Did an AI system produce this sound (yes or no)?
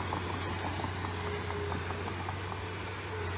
no